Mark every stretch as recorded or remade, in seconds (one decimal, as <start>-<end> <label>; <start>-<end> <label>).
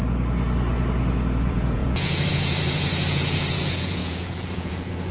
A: 0.0-1.4 recorded; 1.4-5.1 remade